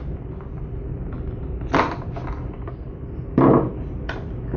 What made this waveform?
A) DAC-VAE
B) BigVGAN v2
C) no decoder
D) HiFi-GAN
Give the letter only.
B